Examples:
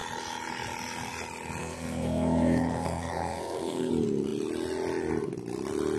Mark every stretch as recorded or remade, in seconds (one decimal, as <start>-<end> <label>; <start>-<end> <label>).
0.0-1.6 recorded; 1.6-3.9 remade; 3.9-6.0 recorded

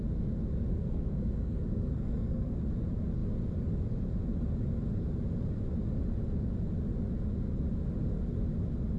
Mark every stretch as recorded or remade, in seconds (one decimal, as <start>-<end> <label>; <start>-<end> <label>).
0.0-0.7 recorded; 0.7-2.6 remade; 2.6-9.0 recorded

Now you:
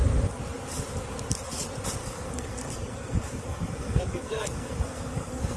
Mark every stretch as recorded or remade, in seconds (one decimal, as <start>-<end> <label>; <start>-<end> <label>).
0.0-2.0 recorded; 2.0-5.6 remade

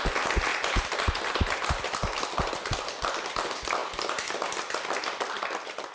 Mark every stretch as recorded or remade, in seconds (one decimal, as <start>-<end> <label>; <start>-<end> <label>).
0.0-5.9 recorded

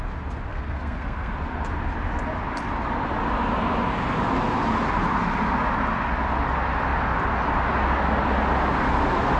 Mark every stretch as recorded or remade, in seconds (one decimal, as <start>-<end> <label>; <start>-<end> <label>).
0.0-0.5 recorded; 0.5-1.3 remade; 1.3-9.4 recorded

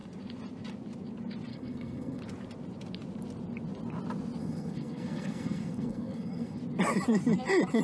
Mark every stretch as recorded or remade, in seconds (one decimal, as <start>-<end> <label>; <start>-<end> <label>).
0.0-1.5 recorded; 1.5-2.2 remade; 2.2-4.4 recorded; 4.4-6.6 remade; 6.6-7.8 recorded

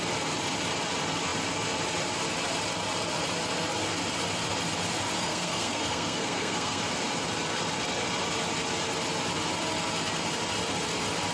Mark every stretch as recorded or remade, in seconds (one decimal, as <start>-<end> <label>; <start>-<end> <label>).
0.0-5.2 recorded; 5.2-6.8 remade; 6.8-11.3 recorded